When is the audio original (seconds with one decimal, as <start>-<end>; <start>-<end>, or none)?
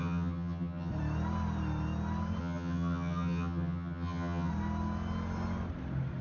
0.9-2.4; 4.5-6.2